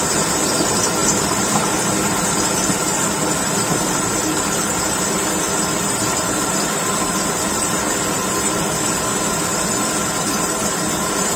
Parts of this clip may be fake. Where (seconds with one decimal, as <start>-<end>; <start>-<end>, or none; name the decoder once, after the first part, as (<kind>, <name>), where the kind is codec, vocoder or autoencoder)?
0.0-11.4 (vocoder, BigVGAN v2)